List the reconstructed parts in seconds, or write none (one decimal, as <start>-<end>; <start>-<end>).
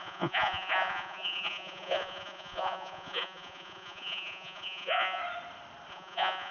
0.0-5.2; 5.9-6.5